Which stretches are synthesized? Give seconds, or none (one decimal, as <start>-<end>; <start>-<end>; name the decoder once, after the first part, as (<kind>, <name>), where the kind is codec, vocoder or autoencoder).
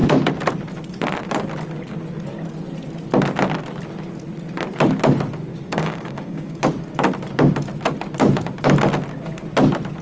5.5-6.6 (codec, DAC)